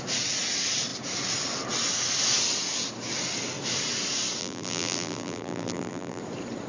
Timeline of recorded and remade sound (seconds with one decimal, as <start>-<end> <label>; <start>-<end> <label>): 0.0-4.4 recorded; 4.4-6.2 remade; 6.2-6.7 recorded